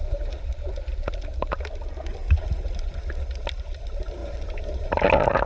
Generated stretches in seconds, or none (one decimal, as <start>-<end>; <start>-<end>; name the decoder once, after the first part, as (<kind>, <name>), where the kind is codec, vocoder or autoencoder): 0.0-0.7 (vocoder, BigVGAN v2); 4.2-5.1